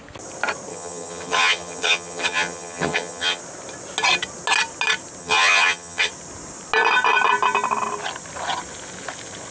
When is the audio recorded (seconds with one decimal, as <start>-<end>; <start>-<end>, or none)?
0.0-0.7; 3.4-5.2; 6.1-9.5

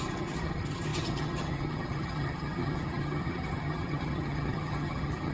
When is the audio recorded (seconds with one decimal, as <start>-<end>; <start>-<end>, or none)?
none

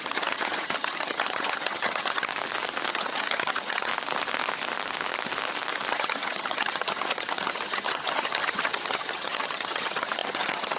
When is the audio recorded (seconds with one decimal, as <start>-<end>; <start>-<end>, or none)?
2.3-2.9; 3.9-5.9

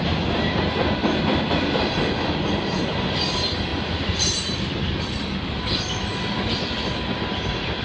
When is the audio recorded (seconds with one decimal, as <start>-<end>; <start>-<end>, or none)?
0.0-7.8

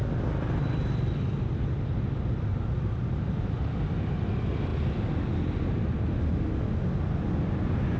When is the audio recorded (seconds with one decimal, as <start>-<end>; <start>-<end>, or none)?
0.0-8.0